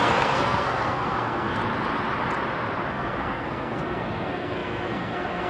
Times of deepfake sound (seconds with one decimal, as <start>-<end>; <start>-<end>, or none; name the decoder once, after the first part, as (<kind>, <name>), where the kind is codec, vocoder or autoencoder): 0.0-1.6 (codec, SNAC); 2.9-5.5